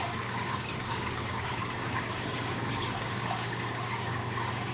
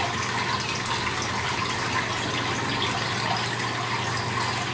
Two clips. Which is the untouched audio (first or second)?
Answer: second